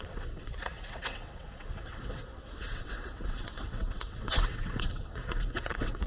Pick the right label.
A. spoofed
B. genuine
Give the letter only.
A